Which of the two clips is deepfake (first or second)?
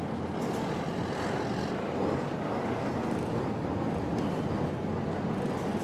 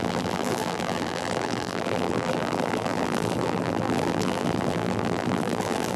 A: second